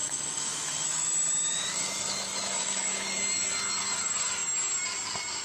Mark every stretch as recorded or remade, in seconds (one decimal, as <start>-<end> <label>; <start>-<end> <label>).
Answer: 0.0-3.2 remade; 3.2-5.4 recorded

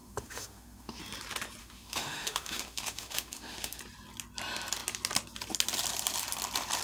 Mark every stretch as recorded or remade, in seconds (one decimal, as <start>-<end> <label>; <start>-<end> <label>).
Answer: 0.0-1.0 remade; 1.0-1.6 recorded; 1.6-3.8 remade; 3.8-6.8 recorded

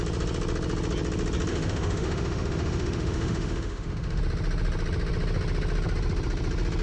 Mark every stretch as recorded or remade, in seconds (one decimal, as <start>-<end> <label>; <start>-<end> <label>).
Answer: 0.0-1.5 recorded; 1.5-4.2 remade; 4.2-6.8 recorded

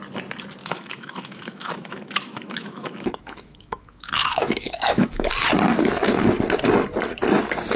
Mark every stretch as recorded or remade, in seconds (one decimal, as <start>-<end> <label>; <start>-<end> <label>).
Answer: 0.0-0.6 recorded; 0.6-5.3 remade; 5.3-7.8 recorded